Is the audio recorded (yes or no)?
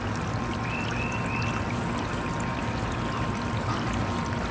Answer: yes